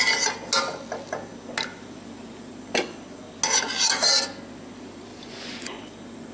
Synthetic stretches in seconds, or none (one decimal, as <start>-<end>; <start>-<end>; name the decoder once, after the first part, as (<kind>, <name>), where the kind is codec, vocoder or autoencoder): 5.1-5.8 (vocoder, Vocos)